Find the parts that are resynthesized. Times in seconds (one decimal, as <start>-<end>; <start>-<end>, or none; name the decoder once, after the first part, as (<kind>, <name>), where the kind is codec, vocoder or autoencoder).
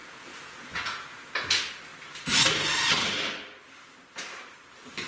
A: 0.0-1.3 (vocoder, Vocos)